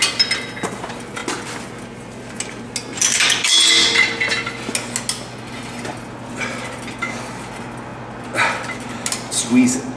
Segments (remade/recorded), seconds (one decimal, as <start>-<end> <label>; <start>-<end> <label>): 0.0-10.0 recorded